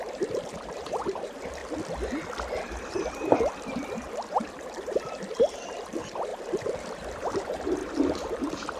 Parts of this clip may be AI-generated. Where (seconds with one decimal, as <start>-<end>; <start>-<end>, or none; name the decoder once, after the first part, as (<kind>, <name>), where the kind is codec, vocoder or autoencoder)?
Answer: 0.0-1.6 (vocoder, BigVGAN v2); 2.6-8.8